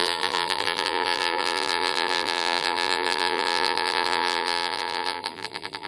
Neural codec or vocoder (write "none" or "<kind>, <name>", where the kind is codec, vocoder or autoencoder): vocoder, BigVGAN v2